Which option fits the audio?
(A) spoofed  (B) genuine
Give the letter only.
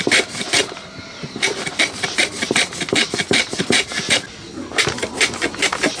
B